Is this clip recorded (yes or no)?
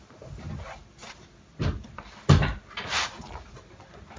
yes